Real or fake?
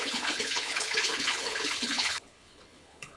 fake